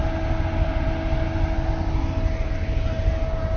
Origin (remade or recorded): recorded